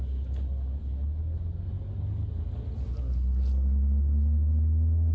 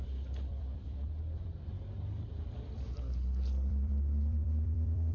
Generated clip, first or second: second